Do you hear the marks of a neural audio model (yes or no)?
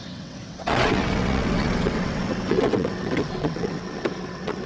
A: yes